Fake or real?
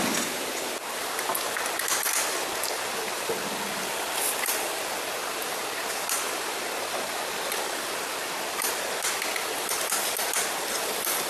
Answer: real